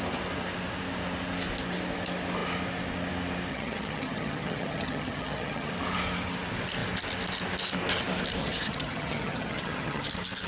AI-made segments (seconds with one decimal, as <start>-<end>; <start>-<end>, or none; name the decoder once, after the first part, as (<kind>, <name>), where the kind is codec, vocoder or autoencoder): 3.5-5.7 (vocoder, HiFi-GAN); 8.4-10.1